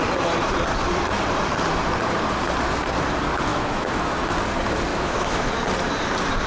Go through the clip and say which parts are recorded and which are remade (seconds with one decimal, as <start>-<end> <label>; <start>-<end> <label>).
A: 0.0-3.5 recorded; 3.5-4.0 remade; 4.0-4.9 recorded; 4.9-5.5 remade; 5.5-6.5 recorded